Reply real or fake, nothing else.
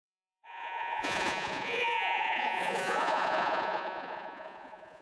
fake